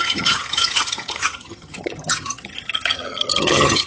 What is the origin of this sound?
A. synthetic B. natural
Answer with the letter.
A